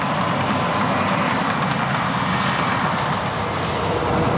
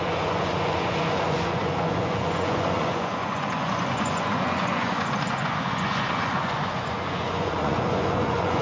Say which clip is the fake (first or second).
second